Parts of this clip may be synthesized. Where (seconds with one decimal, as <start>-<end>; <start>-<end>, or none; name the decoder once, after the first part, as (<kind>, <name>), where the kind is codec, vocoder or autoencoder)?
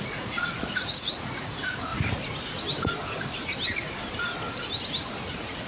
0.0-1.9 (vocoder, Vocos); 5.3-5.7